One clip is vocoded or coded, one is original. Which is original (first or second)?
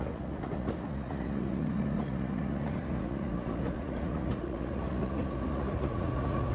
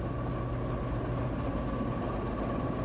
second